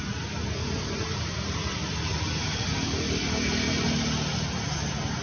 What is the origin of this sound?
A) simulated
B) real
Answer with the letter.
B